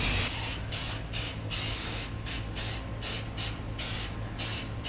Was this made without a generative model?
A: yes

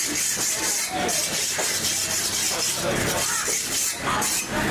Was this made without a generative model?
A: yes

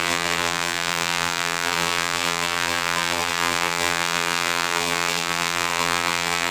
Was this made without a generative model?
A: no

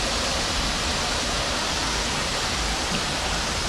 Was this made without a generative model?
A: yes